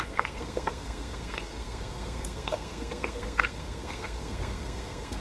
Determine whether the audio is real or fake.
fake